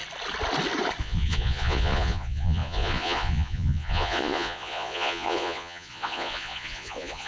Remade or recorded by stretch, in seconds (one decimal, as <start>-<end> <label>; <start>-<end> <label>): 0.0-1.0 recorded; 1.0-7.3 remade